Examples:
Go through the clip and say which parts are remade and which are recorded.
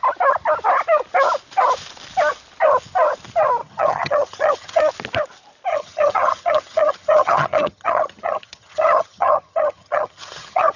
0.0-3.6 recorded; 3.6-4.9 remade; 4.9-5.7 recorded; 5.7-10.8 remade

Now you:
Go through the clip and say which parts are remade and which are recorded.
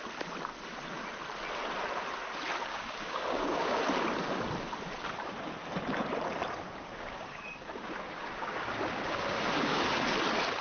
0.0-2.7 recorded; 2.7-3.8 remade; 3.8-6.9 recorded; 6.9-9.8 remade; 9.8-10.6 recorded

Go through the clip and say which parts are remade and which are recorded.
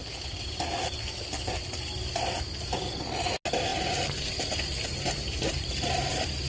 0.0-6.5 recorded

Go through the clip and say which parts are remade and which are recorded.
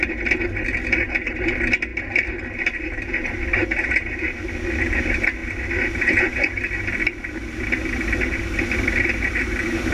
0.0-9.9 recorded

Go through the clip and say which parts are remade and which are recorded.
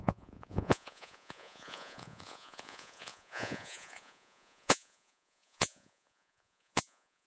0.0-7.3 remade